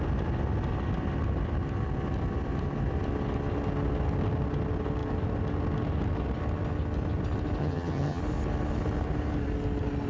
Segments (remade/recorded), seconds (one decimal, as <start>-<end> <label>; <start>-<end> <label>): 0.0-7.6 recorded; 7.6-8.2 remade; 8.2-10.1 recorded